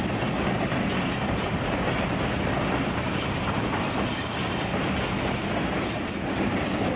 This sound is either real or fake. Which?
real